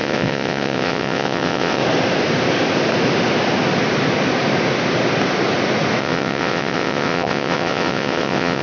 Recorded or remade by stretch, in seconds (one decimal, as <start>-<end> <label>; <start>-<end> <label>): 0.0-1.8 remade; 1.8-6.0 recorded; 6.0-8.6 remade